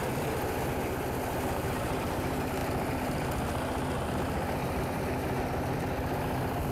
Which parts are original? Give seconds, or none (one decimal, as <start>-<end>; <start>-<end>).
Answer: 0.0-1.5; 2.6-6.7